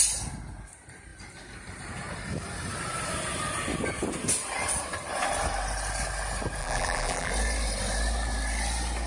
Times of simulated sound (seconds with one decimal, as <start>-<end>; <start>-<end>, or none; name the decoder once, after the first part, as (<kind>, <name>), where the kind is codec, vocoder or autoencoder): 6.6-7.3 (vocoder, BigVGAN v2)